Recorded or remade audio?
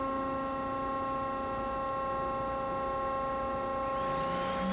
recorded